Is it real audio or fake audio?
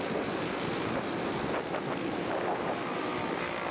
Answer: real